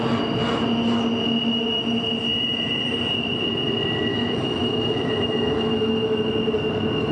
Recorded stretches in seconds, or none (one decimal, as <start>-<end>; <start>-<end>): 0.0-4.1; 6.3-7.1